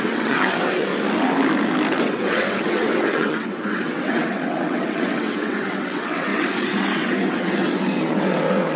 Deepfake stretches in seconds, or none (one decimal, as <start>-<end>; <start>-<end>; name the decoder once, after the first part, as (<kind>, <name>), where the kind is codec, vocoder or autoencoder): 0.0-0.9 (vocoder, WaveNeXt); 2.0-8.8